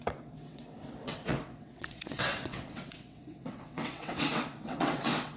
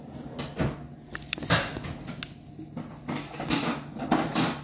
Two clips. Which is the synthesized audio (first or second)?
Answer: first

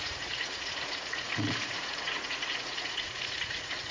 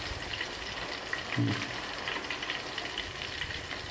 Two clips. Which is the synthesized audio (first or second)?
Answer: first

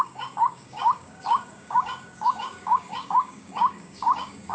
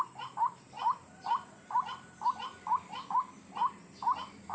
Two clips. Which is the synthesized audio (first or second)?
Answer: first